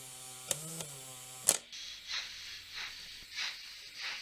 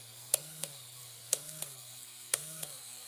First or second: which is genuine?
first